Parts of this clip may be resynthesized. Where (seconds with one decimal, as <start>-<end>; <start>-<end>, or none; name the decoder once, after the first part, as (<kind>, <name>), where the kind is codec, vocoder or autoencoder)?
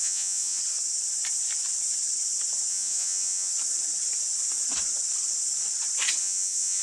0.0-0.6 (vocoder, Vocos); 2.7-3.5; 6.2-6.8